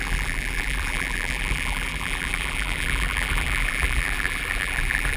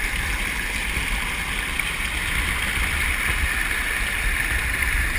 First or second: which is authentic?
second